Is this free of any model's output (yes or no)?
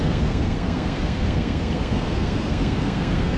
no